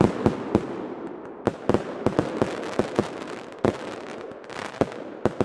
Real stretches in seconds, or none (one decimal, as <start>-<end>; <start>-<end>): 0.0-5.4